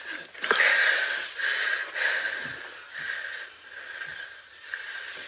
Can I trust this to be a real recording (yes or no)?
yes